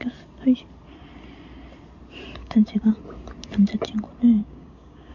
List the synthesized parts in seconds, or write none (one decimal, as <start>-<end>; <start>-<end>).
2.4-2.9; 4.4-5.1

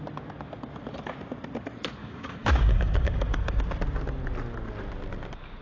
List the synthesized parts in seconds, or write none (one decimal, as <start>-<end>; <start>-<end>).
2.0-3.6

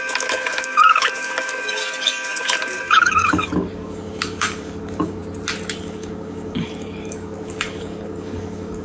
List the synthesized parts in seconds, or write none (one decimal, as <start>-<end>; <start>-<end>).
0.0-5.2; 5.8-8.8

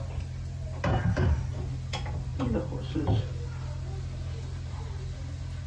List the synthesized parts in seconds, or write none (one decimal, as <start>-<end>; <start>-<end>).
none

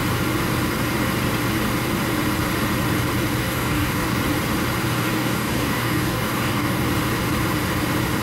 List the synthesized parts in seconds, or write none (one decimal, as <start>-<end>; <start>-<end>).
3.4-4.2; 4.8-6.9

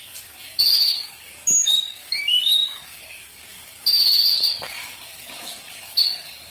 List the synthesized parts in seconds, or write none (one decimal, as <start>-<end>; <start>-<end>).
0.0-6.5